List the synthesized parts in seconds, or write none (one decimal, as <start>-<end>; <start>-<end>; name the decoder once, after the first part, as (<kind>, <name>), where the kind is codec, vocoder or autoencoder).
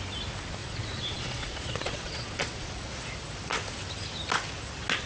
0.6-2.7 (vocoder, Vocos)